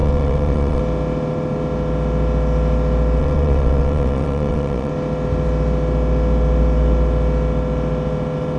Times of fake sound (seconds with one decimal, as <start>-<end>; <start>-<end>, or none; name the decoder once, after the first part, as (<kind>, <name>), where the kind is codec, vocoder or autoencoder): 0.0-0.8 (vocoder, WaveNeXt); 3.2-4.9

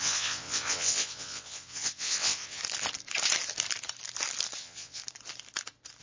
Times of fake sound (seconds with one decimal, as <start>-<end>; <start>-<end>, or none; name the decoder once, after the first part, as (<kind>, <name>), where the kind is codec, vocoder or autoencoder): 0.0-2.6 (vocoder, WaveNeXt); 4.6-5.0

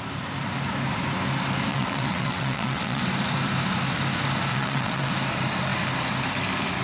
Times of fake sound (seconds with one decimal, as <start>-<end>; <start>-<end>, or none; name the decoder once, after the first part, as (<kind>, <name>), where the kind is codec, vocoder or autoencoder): 1.7-3.0 (vocoder, WaveNeXt); 4.5-5.1

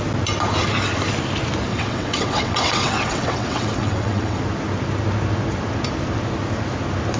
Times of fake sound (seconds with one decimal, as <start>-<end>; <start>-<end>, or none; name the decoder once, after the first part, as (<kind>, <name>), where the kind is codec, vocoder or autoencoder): 1.7-4.4 (vocoder, WaveNeXt)

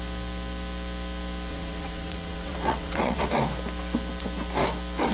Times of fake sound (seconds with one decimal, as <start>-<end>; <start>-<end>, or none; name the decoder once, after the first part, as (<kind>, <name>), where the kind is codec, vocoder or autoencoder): 1.5-3.3 (vocoder, WaveNeXt)

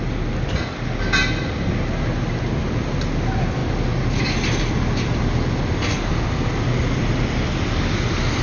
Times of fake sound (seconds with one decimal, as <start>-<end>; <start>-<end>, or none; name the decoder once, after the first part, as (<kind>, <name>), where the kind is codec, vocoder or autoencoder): none

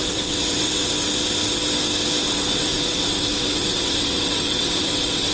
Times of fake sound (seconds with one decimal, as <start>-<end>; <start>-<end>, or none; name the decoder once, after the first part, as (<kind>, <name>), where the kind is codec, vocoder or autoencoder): 0.0-0.9 (vocoder, WaveNeXt); 2.2-5.3

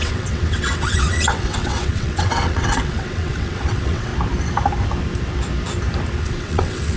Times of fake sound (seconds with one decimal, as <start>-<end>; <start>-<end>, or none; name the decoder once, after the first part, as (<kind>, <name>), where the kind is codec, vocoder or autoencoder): 0.0-4.1 (vocoder, WaveNeXt); 6.2-7.0